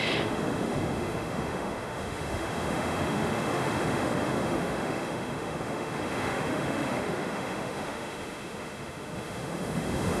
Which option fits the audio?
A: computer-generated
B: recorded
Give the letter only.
A